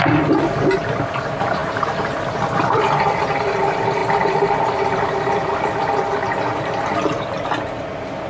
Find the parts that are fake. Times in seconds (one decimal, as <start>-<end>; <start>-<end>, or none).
1.6-2.1